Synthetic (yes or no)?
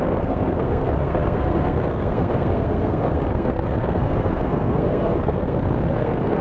yes